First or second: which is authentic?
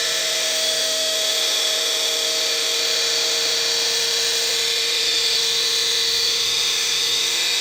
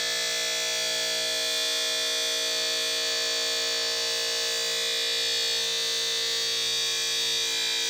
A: second